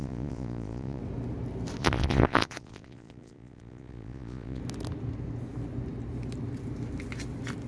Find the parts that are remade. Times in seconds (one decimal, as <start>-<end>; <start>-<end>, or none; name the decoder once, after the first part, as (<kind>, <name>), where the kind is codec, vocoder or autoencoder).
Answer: 0.0-1.0 (vocoder, Vocos); 1.8-4.6